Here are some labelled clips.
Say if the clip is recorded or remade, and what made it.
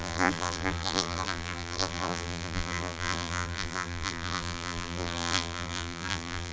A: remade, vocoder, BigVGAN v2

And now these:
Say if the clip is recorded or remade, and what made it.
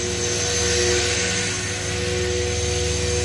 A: recorded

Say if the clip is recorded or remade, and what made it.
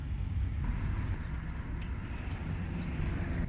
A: recorded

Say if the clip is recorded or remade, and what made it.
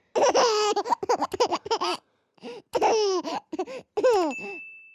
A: recorded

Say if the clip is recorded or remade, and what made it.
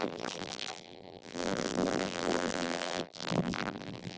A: remade, vocoder, BigVGAN v2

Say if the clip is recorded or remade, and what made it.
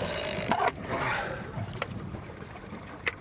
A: remade, vocoder, BigVGAN v2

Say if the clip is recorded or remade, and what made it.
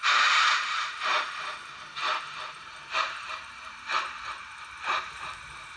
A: remade, vocoder, BigVGAN v2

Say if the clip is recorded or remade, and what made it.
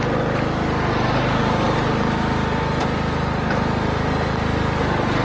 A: recorded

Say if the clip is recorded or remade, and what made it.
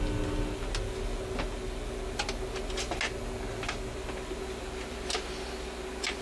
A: recorded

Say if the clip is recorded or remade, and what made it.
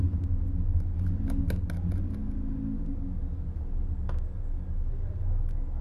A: recorded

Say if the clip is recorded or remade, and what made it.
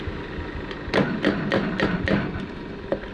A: recorded